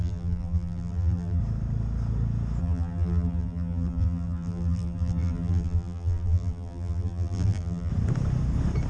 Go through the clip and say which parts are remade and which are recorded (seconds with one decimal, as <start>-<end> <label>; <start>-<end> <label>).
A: 0.0-1.4 remade; 1.4-2.6 recorded; 2.6-7.9 remade; 7.9-8.9 recorded